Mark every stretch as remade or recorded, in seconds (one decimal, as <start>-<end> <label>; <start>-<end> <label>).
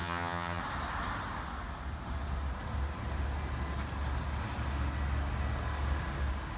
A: 0.0-0.6 remade; 0.6-6.6 recorded